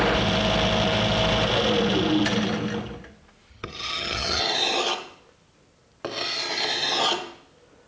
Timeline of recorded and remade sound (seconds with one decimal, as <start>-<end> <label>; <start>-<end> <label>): 0.0-3.5 recorded; 3.5-4.4 remade; 4.4-7.9 recorded